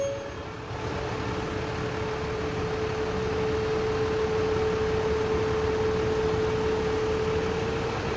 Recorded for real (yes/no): yes